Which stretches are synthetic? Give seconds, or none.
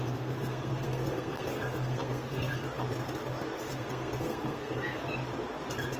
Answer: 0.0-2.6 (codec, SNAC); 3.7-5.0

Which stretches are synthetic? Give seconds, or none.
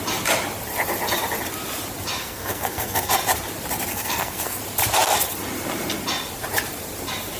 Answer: 2.2-3.1 (codec, SNAC); 3.9-4.6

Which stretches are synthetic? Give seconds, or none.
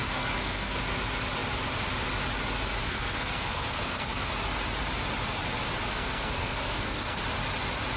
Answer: 0.0-0.8 (codec, SNAC); 2.8-4.3; 5.9-7.2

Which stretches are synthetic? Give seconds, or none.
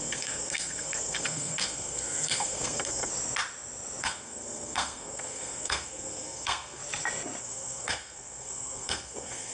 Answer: 0.0-3.1 (codec, SNAC); 4.0-6.8; 7.4-9.5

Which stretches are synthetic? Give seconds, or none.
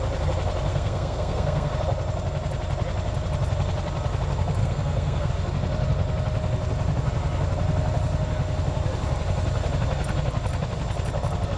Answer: 0.7-1.7 (codec, SNAC); 4.6-5.3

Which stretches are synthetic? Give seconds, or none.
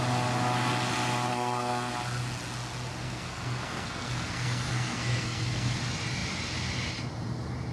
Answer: 1.3-1.9 (codec, SNAC); 3.0-5.8